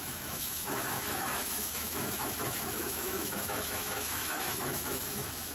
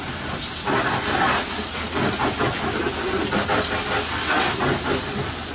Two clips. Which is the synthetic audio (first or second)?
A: first